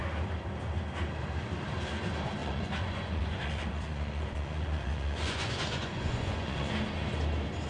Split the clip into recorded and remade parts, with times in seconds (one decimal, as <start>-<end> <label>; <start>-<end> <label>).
0.0-2.4 recorded; 2.4-6.7 remade; 6.7-7.7 recorded